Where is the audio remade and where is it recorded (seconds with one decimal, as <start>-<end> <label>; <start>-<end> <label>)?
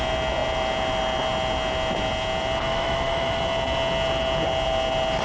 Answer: 0.0-2.7 recorded; 2.7-3.4 remade; 3.4-5.2 recorded